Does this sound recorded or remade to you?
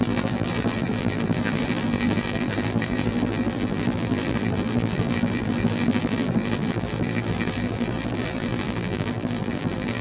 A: remade